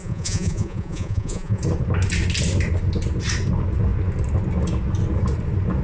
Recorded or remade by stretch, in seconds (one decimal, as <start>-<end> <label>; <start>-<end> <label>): 0.0-1.6 remade; 1.6-5.8 recorded